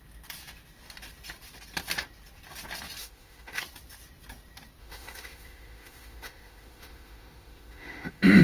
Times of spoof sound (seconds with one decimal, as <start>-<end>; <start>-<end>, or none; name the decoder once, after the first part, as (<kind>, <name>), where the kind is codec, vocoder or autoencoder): 3.0-3.6 (autoencoder, DAC-VAE); 4.8-8.4